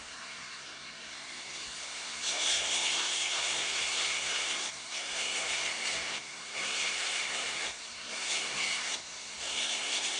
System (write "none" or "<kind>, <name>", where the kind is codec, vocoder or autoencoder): codec, SNAC